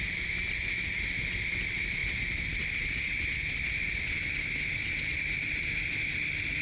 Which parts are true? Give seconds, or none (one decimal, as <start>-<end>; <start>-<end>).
0.0-6.6